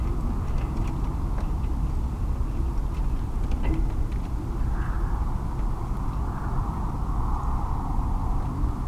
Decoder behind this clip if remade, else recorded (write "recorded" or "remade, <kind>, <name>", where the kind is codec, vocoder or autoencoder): recorded